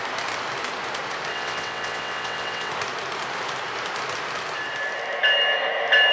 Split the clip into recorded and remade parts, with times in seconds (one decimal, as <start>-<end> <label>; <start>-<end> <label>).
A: 0.0-1.3 recorded; 1.3-2.7 remade; 2.7-6.1 recorded